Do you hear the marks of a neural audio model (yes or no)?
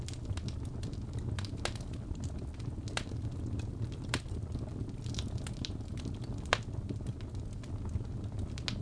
no